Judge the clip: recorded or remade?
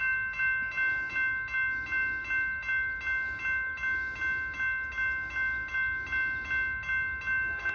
recorded